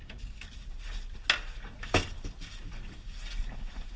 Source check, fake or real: real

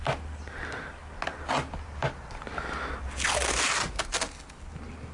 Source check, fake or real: real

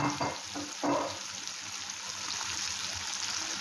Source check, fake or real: real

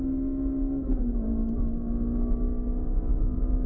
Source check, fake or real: real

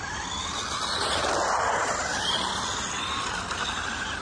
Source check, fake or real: real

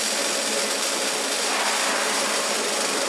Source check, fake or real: real